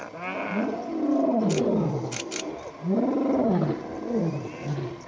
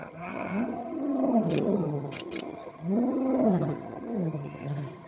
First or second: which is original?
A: first